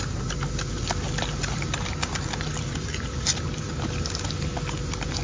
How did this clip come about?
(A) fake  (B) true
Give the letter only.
B